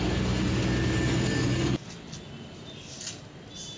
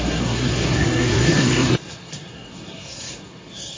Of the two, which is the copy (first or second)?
second